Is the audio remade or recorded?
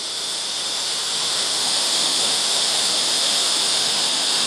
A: remade